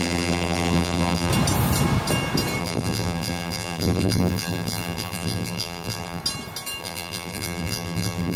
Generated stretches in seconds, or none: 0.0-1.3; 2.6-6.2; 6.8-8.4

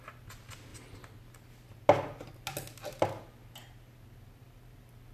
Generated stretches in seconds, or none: none

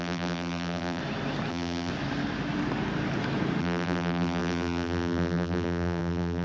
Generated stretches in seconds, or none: 0.0-1.0; 1.5-1.9; 3.6-6.4

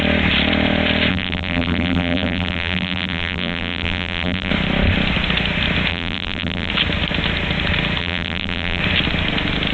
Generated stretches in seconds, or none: 1.1-4.5; 5.9-6.7; 8.0-8.8

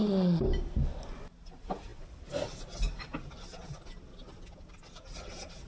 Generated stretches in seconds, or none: none